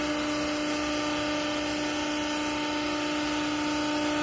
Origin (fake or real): real